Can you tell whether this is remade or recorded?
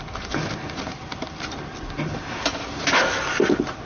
recorded